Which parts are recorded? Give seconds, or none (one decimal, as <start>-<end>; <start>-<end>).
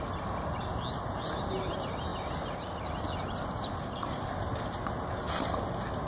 0.0-6.1